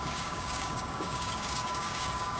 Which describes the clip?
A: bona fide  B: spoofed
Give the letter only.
B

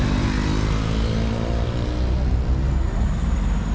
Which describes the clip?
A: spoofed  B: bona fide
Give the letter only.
B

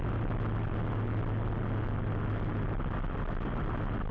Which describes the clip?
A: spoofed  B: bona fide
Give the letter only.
B